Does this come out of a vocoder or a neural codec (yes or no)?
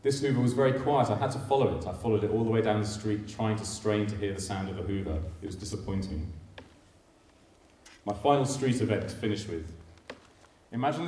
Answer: no